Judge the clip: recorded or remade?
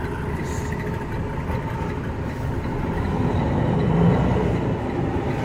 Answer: recorded